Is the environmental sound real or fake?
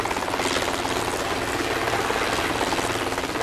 real